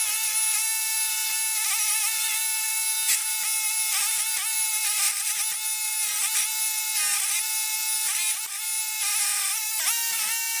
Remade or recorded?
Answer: recorded